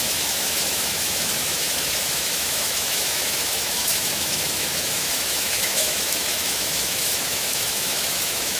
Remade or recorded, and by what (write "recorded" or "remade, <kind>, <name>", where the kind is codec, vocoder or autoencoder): remade, autoencoder, DAC-VAE